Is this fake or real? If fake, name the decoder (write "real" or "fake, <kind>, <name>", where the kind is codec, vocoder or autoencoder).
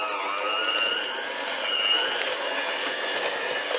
real